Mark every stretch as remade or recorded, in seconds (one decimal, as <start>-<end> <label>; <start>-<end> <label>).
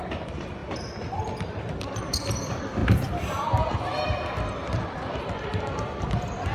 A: 0.0-6.5 remade